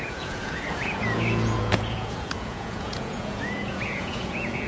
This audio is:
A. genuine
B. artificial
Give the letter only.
B